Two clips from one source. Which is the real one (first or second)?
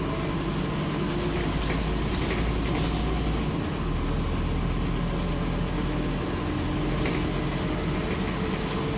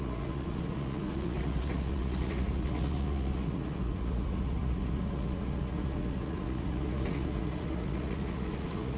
first